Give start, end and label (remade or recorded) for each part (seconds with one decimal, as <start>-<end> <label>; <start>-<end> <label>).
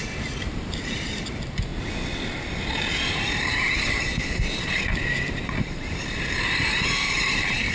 0.0-1.7 remade; 1.7-2.8 recorded; 2.8-7.7 remade